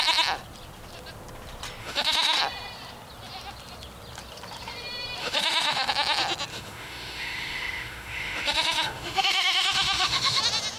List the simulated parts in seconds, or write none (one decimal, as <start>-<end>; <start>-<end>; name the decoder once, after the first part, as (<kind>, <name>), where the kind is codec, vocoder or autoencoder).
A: 1.8-2.4 (autoencoder, DAC-VAE); 5.2-5.9; 6.5-10.4